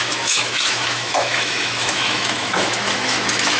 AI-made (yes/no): yes